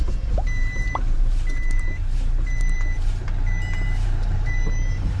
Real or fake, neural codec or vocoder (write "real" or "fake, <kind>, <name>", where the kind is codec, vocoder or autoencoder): fake, vocoder, BigVGAN v2